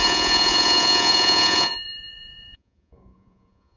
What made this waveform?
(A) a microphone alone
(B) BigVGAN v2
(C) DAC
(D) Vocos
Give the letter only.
D